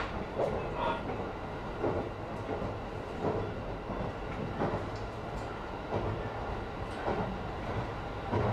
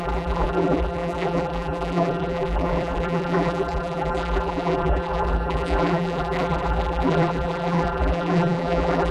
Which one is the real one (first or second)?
first